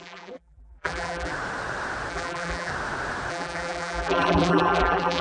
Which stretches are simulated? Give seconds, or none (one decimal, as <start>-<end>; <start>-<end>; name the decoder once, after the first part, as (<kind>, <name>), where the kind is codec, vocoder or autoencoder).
0.0-1.3 (vocoder, BigVGAN v2); 2.1-2.7; 3.3-5.2